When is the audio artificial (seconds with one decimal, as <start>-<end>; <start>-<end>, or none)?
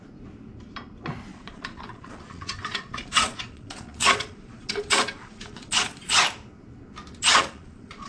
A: 1.3-6.2; 7.3-8.1